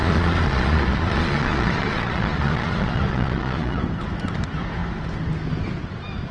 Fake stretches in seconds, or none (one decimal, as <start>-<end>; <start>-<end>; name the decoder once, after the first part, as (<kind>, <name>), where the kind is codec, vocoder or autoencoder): 0.0-3.8 (vocoder, Vocos)